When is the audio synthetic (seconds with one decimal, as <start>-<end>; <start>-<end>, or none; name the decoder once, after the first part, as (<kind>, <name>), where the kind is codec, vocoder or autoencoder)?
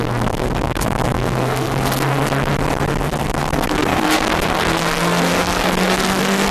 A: 0.0-2.5 (codec, SNAC); 3.0-6.5